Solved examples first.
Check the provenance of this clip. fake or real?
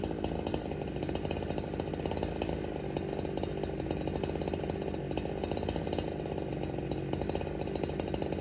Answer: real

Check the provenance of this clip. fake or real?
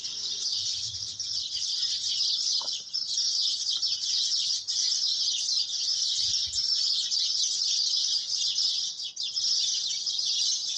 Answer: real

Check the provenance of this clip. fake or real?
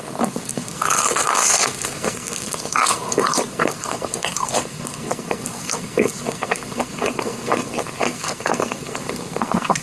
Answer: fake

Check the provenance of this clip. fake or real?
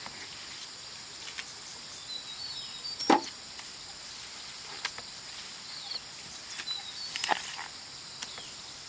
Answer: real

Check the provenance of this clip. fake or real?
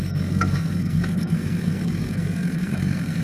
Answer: fake